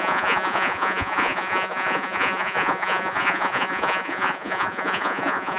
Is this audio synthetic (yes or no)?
yes